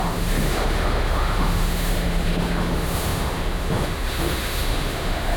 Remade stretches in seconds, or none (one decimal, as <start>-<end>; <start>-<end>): 0.0-5.4